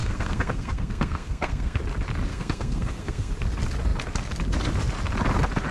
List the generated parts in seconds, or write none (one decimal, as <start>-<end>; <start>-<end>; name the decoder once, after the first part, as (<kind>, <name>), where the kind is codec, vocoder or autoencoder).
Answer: 0.0-1.8 (codec, SNAC); 2.3-3.3